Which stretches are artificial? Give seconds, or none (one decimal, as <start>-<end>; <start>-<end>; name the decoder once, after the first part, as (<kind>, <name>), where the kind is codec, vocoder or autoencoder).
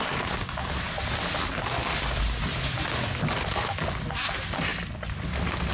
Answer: none